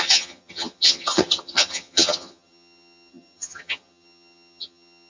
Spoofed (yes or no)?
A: yes